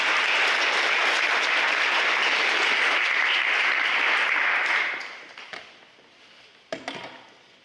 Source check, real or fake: real